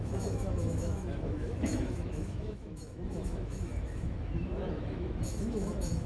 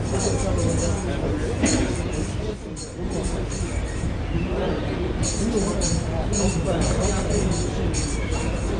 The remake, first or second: first